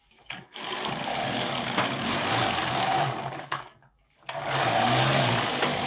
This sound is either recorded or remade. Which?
remade